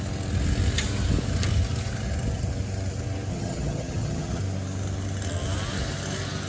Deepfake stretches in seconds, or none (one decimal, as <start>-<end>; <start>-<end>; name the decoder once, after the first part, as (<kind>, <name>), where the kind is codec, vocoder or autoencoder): 3.3-4.4 (vocoder, HiFi-GAN)